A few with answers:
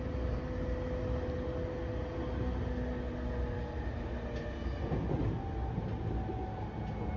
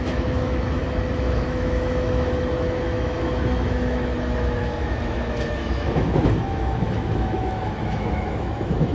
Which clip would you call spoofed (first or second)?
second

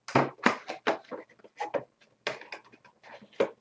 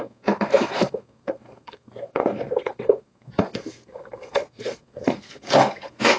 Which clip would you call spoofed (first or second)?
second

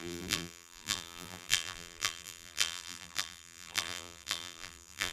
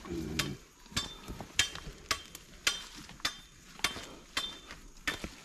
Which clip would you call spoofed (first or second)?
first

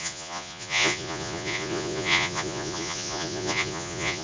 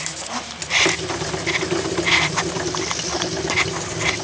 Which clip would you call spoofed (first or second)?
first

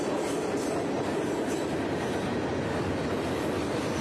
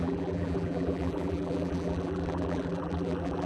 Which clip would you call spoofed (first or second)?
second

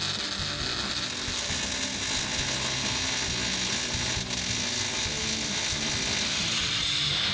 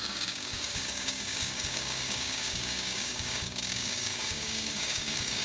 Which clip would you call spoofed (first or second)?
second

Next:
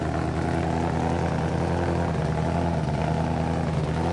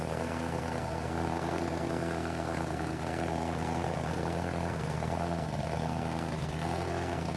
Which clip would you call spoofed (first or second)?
second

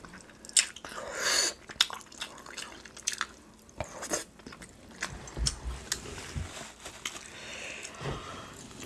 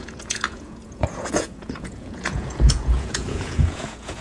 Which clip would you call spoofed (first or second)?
second